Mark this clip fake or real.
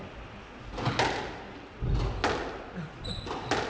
real